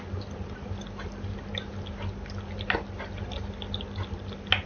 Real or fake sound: real